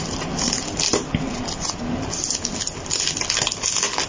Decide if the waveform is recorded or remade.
recorded